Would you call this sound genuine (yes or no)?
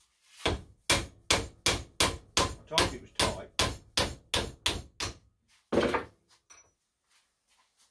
yes